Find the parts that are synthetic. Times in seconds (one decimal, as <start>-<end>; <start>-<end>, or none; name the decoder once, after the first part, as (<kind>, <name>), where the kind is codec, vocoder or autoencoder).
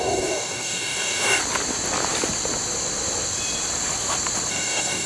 0.0-1.4 (codec, DAC); 4.5-5.1